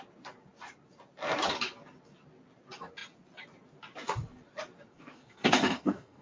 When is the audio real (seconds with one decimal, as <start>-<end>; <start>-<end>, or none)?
0.0-4.9